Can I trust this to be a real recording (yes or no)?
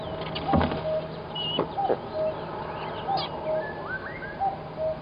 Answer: yes